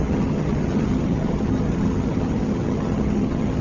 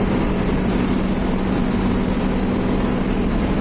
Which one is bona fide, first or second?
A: second